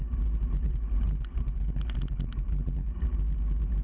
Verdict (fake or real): real